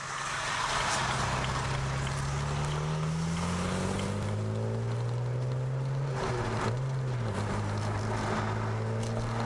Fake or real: real